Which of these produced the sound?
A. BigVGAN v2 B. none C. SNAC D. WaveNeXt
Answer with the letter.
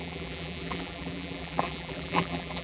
A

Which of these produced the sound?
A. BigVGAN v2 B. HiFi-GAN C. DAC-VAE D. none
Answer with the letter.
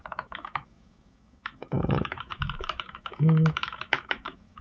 C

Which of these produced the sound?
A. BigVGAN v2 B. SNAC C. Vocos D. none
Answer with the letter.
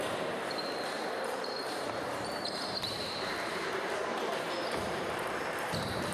A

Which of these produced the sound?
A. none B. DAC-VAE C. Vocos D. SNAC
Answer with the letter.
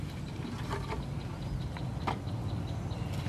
A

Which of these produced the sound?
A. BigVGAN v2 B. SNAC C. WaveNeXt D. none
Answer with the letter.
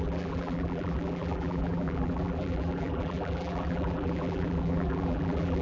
A